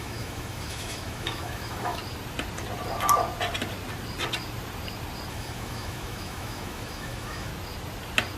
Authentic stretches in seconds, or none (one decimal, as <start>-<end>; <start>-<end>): 2.0-5.3; 7.5-8.4

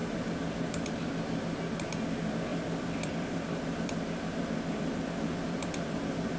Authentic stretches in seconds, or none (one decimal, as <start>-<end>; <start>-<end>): 0.9-2.5

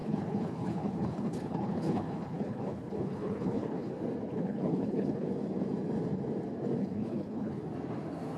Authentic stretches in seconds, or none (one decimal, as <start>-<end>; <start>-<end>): 3.9-4.3; 5.3-6.8; 7.6-8.4

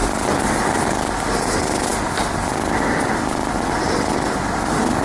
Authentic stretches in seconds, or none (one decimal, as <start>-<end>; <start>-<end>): 0.0-5.0

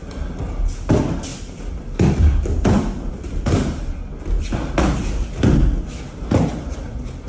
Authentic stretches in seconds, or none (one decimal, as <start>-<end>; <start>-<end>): 0.0-7.3

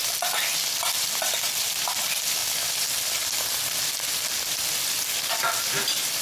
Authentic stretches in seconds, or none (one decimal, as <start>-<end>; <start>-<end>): 2.4-6.2